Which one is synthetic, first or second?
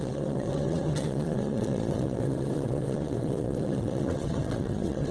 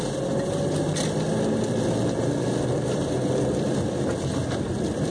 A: first